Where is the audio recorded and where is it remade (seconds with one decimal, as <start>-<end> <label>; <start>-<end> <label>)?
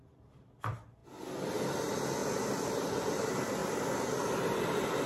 0.0-1.0 remade; 1.0-1.8 recorded; 1.8-2.2 remade; 2.2-2.8 recorded; 2.8-3.6 remade; 3.6-5.1 recorded